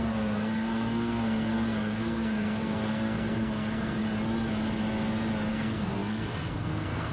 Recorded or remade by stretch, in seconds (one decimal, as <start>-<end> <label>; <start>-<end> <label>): 0.0-4.0 remade; 4.0-5.5 recorded; 5.5-7.1 remade